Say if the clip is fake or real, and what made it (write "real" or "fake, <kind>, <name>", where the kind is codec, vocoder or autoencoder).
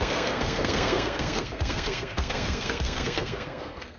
fake, codec, SNAC